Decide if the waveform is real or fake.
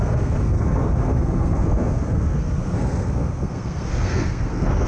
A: fake